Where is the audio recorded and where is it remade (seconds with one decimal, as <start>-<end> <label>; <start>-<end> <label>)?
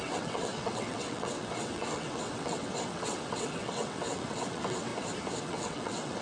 0.0-4.9 remade; 4.9-5.4 recorded; 5.4-6.2 remade